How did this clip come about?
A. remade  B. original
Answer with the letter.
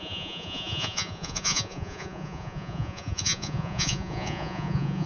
A